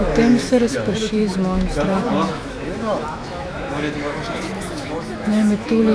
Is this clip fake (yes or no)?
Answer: yes